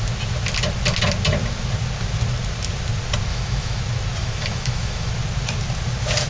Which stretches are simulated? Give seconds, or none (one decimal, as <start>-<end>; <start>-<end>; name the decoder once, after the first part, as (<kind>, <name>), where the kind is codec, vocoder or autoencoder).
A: 3.3-3.8 (autoencoder, DAC-VAE); 4.2-5.1